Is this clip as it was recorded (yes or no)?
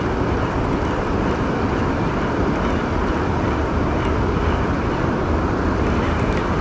yes